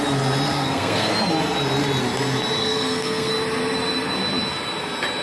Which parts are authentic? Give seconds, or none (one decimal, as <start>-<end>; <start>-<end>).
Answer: 0.0-0.5; 1.1-2.6; 3.3-5.2